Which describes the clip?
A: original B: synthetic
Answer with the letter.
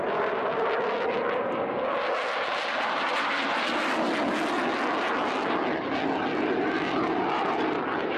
A